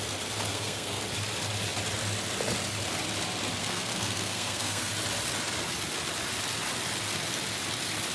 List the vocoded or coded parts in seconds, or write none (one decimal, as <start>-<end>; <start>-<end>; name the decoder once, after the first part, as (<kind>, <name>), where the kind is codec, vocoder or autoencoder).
0.5-1.0 (codec, SNAC); 3.6-4.9